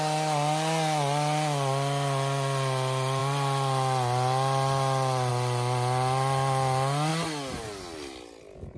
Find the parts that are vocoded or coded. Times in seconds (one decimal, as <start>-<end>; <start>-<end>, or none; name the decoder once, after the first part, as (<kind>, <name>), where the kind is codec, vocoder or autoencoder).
none